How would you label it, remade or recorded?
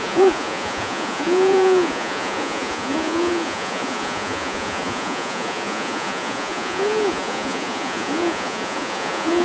remade